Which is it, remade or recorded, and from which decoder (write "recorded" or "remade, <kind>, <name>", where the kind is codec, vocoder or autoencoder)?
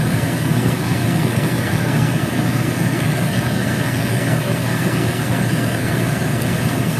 remade, codec, SNAC